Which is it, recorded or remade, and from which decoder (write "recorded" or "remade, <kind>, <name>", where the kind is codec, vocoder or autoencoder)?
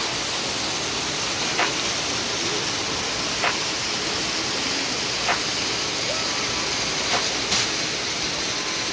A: recorded